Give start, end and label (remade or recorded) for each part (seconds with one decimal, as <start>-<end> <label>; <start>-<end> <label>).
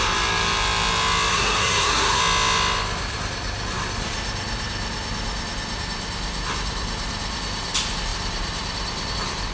0.0-1.3 recorded; 1.3-2.2 remade; 2.2-9.5 recorded